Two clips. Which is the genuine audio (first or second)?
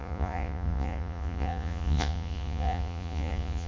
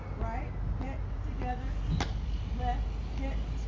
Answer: second